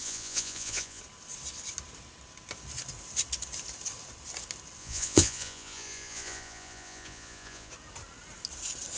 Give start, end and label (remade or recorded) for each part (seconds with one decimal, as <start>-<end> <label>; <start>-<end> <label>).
0.0-1.0 remade; 1.0-4.8 recorded; 4.8-7.7 remade; 7.7-9.0 recorded